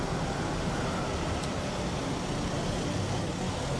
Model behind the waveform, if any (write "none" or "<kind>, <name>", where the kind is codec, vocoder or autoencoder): none